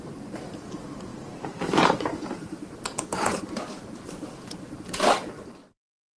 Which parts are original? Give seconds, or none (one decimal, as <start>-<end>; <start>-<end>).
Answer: 0.0-1.1; 4.8-6.2